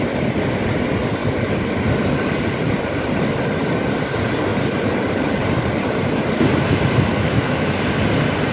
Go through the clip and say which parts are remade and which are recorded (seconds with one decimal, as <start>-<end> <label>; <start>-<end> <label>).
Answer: 0.0-7.1 recorded; 7.1-7.8 remade; 7.8-8.5 recorded